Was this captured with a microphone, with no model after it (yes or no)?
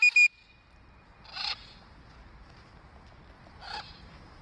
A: yes